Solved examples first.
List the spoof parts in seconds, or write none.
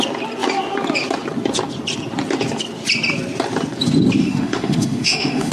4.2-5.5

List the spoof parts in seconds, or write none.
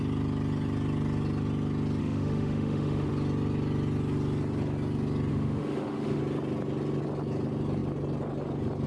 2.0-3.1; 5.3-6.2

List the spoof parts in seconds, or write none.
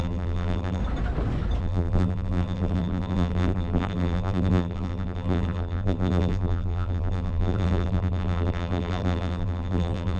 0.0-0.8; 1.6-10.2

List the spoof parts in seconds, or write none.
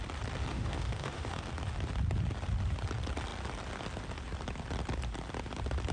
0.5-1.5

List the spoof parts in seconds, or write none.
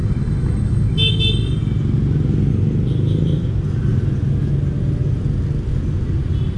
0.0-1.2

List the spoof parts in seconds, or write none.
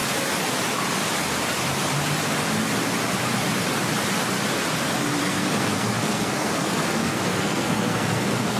5.2-8.6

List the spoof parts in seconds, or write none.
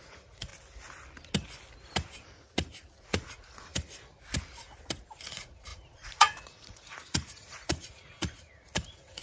0.0-0.5; 3.0-3.7; 5.2-9.2